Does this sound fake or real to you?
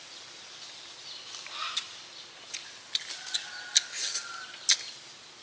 real